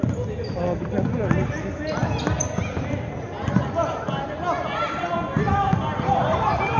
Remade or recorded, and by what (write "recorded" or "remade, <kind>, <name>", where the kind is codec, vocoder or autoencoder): recorded